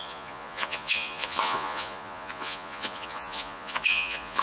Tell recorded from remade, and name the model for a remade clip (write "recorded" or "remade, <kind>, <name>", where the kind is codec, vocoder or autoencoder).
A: remade, vocoder, Vocos